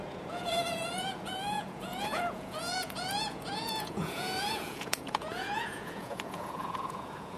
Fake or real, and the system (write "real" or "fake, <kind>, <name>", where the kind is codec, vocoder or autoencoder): fake, vocoder, Vocos